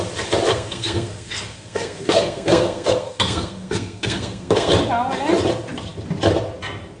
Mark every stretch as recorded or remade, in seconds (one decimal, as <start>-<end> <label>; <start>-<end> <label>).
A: 0.0-0.5 recorded; 0.5-4.7 remade; 4.7-7.0 recorded